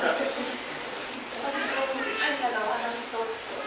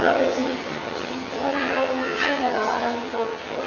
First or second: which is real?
first